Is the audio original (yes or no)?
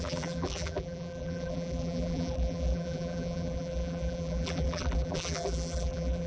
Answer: no